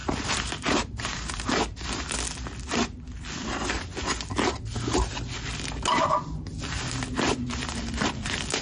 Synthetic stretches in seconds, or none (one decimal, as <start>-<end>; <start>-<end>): 0.0-1.5